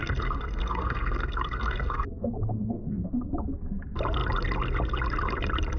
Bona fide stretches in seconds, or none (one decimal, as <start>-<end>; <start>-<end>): 3.2-5.8